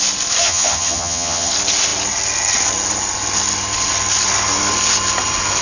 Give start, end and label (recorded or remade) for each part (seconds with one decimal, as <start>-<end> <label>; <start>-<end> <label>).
0.0-0.4 recorded; 0.4-1.5 remade; 1.5-5.6 recorded